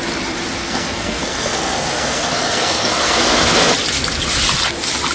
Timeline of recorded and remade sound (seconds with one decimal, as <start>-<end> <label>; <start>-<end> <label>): 0.0-0.6 recorded; 0.6-3.7 remade; 3.7-5.1 recorded